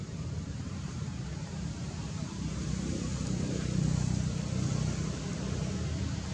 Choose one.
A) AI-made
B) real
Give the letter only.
A